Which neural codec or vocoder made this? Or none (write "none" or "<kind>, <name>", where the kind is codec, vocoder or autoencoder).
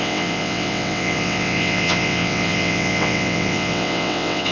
vocoder, WaveNeXt